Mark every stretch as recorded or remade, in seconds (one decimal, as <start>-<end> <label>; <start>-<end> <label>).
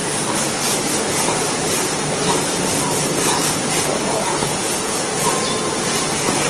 0.0-3.3 recorded; 3.3-6.5 remade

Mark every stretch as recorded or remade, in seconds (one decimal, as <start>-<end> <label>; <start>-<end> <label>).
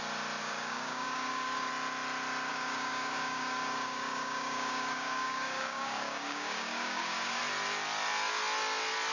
0.0-0.4 recorded; 0.4-1.7 remade; 1.7-2.5 recorded; 2.5-7.4 remade; 7.4-9.1 recorded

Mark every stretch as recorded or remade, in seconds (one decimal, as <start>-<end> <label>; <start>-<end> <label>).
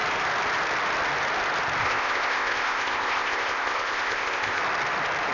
0.0-1.8 recorded; 1.8-4.6 remade; 4.6-5.3 recorded